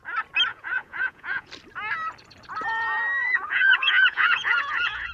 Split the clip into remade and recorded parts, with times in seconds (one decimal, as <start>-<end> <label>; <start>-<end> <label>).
0.0-0.5 recorded; 0.5-1.5 remade; 1.5-3.2 recorded; 3.2-5.1 remade